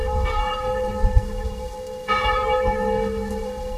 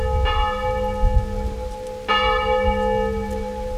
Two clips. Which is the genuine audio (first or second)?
second